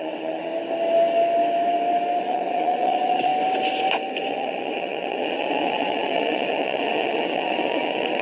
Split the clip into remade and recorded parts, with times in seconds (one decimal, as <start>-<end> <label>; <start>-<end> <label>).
0.0-0.5 remade; 0.5-2.2 recorded; 2.2-3.3 remade; 3.3-4.3 recorded; 4.3-8.2 remade